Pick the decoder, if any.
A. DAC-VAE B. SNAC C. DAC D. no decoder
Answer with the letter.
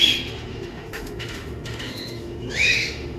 A